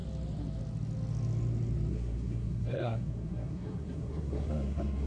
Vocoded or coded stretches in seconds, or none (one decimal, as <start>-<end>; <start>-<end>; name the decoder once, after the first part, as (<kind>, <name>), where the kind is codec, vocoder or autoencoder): 1.9-5.1 (codec, SNAC)